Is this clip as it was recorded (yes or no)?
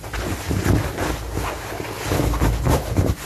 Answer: yes